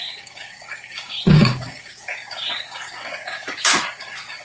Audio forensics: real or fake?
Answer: fake